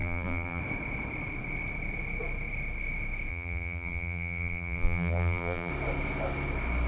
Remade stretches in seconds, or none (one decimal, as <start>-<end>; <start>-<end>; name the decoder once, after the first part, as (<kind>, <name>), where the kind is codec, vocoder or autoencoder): 0.0-0.6 (vocoder, BigVGAN v2); 3.3-5.7